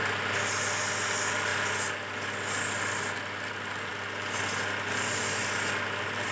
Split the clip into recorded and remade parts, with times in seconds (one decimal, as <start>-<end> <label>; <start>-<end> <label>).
0.0-6.3 recorded